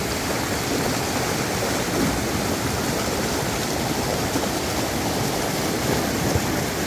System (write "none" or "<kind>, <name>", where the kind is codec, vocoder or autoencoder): none